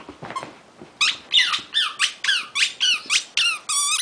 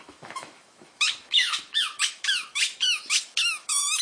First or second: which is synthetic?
second